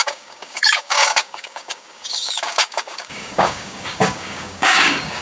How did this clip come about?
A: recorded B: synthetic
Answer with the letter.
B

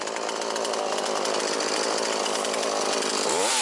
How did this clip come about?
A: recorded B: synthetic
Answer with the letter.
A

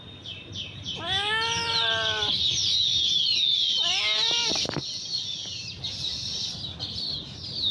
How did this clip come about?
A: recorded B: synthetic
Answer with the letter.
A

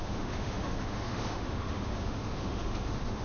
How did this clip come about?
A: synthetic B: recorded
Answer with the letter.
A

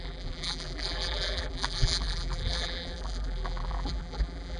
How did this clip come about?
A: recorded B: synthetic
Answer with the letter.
B